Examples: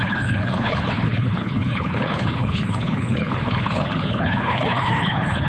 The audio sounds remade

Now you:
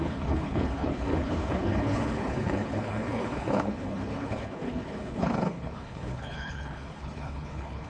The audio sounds remade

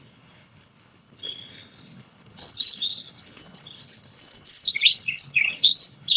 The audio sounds remade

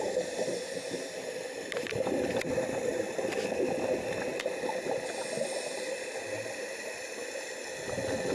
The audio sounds recorded